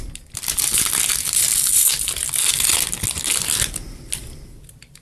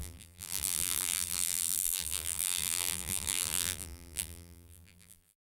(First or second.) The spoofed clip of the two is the second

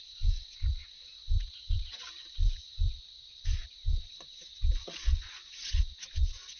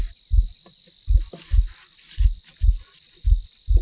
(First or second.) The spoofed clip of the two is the first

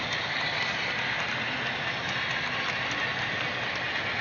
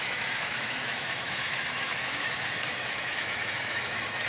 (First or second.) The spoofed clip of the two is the second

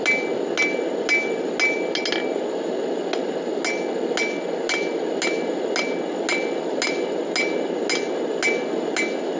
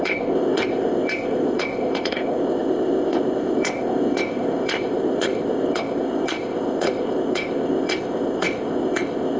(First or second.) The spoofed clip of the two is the second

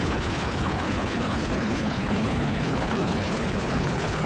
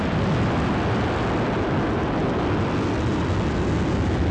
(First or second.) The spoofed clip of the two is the first